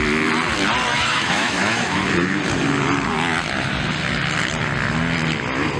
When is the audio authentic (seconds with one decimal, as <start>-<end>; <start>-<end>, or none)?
0.0-0.9; 2.0-5.8